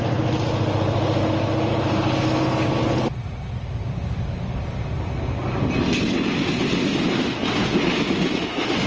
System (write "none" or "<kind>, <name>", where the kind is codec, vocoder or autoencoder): none